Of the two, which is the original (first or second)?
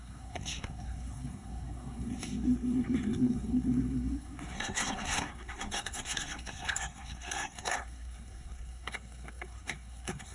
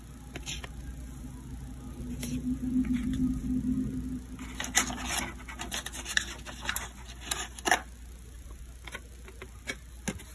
second